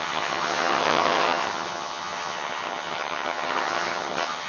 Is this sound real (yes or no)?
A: no